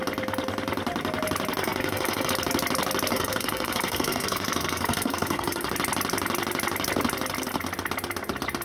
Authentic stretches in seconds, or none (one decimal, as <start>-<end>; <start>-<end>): 0.0-1.6; 2.3-3.1; 5.7-8.6